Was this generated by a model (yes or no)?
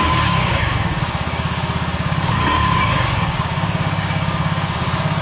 yes